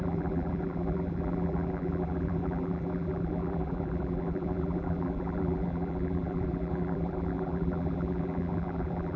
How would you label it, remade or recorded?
remade